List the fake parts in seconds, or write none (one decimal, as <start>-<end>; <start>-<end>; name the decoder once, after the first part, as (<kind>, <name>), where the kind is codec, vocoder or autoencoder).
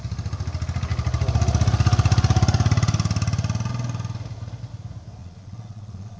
5.2-6.2 (vocoder, Vocos)